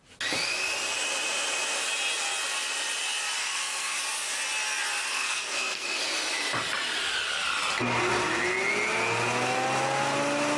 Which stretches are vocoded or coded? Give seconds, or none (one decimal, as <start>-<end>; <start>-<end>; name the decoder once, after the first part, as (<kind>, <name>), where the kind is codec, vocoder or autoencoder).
3.4-4.0 (codec, SNAC); 5.1-6.0